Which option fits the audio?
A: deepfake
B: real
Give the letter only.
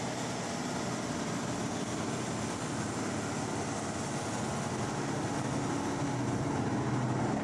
B